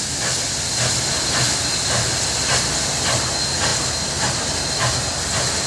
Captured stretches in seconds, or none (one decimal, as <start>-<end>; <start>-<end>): 0.0-5.7